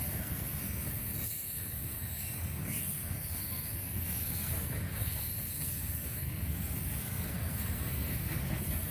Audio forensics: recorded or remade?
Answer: remade